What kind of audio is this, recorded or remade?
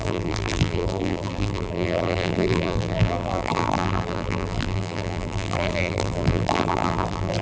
remade